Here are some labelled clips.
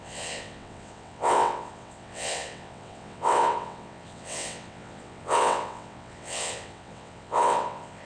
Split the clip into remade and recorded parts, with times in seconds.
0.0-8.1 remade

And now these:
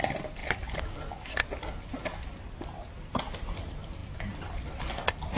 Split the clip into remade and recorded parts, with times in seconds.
0.0-5.4 recorded